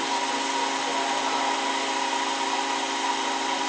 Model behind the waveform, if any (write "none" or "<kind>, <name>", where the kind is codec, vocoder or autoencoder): none